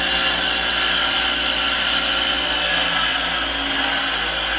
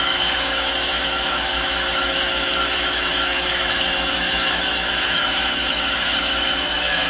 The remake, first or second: second